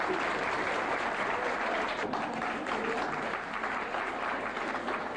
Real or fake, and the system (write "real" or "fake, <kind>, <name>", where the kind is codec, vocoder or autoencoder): real